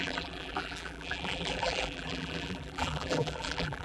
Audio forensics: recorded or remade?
remade